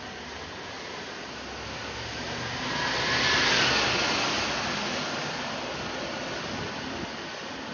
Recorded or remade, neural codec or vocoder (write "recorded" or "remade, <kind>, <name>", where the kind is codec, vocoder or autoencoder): recorded